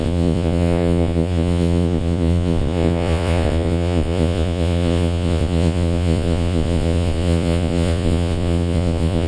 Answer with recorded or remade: remade